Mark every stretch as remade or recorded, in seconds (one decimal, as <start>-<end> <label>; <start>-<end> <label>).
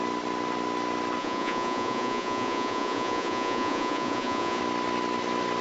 0.0-1.2 recorded; 1.2-4.6 remade; 4.6-5.6 recorded